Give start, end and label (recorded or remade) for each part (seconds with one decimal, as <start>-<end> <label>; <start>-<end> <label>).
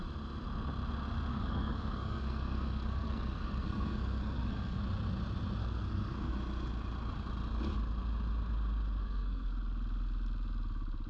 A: 0.0-1.3 recorded; 1.3-4.8 remade; 4.8-5.6 recorded; 5.6-6.3 remade; 6.3-9.0 recorded; 9.0-9.5 remade; 9.5-11.1 recorded